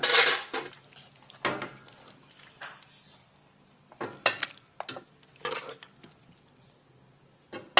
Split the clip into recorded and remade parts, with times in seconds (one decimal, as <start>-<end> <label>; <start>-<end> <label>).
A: 0.0-7.8 recorded